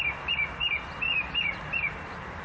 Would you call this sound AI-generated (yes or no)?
no